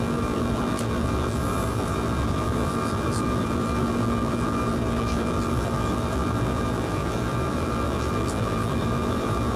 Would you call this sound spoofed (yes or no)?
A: yes